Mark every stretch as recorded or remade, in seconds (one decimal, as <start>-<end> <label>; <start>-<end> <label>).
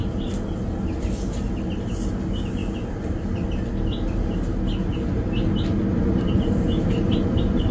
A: 0.0-7.7 recorded